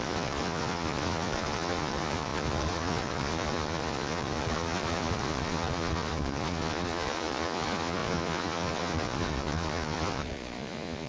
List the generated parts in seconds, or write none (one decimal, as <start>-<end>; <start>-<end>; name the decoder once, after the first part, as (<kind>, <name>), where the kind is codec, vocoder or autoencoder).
0.0-11.1 (vocoder, Vocos)